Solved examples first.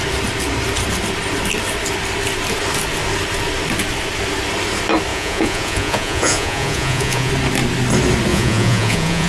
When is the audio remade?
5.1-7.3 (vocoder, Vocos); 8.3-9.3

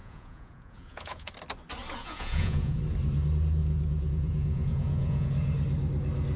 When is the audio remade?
0.0-1.3 (vocoder, Vocos); 2.0-2.8; 3.6-5.3

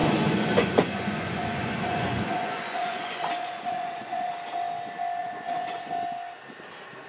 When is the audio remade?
0.0-4.3 (vocoder, Vocos); 5.2-5.9

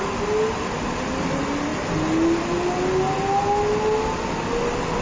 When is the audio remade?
none

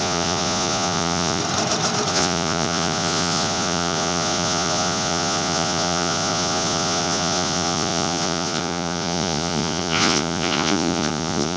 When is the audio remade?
0.0-1.4 (vocoder, Vocos); 2.1-11.6

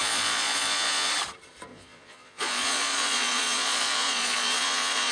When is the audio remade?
0.0-1.1 (vocoder, Vocos); 1.7-5.1

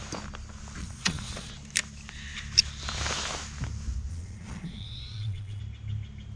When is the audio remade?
0.8-1.5 (vocoder, Vocos); 4.1-5.6

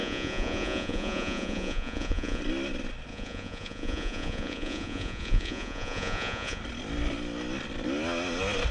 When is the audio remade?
0.0-2.4 (vocoder, Vocos); 3.1-6.6